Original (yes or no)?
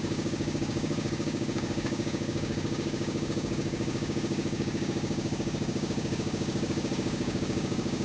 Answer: no